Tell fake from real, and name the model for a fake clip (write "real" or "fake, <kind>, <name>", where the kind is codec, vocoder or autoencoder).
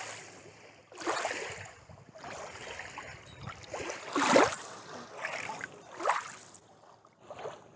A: real